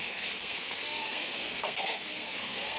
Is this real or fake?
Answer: fake